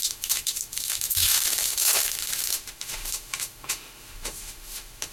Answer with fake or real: fake